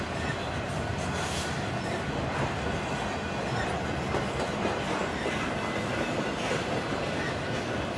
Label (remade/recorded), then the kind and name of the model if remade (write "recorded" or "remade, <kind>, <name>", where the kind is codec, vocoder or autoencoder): recorded